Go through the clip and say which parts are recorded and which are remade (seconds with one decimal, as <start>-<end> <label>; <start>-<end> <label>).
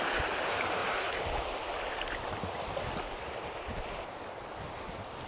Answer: 0.0-5.3 recorded